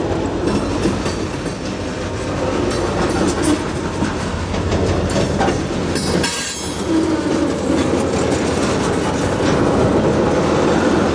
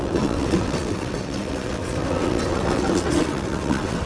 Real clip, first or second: first